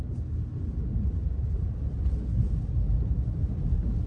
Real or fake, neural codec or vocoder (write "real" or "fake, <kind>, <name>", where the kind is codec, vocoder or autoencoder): real